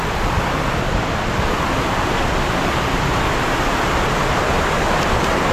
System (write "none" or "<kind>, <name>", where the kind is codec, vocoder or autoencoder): none